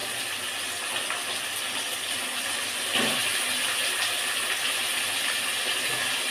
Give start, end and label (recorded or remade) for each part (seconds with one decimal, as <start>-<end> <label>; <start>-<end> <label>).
0.0-1.9 recorded; 1.9-2.7 remade; 2.7-6.3 recorded